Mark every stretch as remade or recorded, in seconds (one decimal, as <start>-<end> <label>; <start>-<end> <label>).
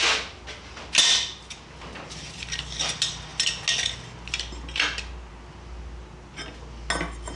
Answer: 0.0-7.4 recorded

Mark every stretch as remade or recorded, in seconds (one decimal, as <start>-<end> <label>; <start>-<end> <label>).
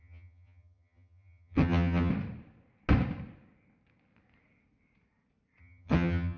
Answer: 0.0-2.1 remade; 2.1-5.6 recorded; 5.6-6.4 remade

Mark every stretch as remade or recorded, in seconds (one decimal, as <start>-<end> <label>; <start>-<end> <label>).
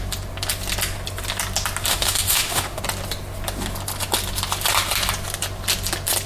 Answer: 0.0-1.9 recorded; 1.9-2.8 remade; 2.8-6.3 recorded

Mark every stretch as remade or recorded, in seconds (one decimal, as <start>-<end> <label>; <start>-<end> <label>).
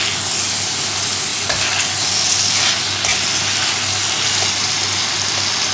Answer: 0.0-5.7 recorded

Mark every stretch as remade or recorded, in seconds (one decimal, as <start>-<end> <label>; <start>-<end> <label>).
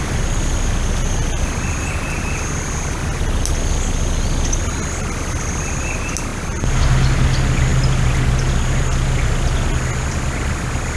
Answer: 0.0-11.0 recorded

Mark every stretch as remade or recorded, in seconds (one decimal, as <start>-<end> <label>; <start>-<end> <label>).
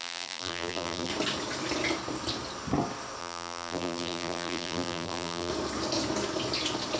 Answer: 0.0-1.1 remade; 1.1-3.2 recorded; 3.2-5.5 remade; 5.5-7.0 recorded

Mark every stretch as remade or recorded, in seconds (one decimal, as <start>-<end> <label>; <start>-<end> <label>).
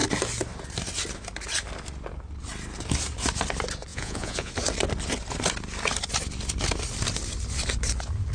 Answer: 0.0-3.9 recorded; 3.9-4.5 remade; 4.5-8.3 recorded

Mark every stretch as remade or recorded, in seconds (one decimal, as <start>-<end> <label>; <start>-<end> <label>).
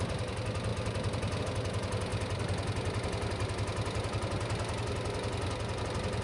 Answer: 0.0-6.2 recorded